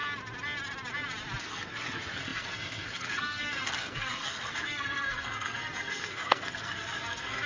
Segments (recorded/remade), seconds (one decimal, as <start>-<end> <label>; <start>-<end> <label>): 0.0-1.4 recorded; 1.4-7.5 remade